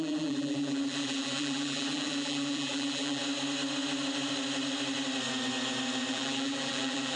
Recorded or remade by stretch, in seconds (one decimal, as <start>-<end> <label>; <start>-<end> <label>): 0.0-3.2 remade; 3.2-6.1 recorded; 6.1-7.2 remade